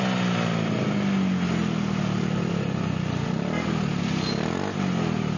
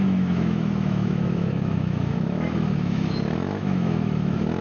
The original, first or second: first